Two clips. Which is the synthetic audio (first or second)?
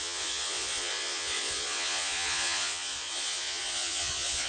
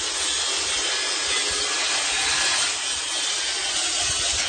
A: first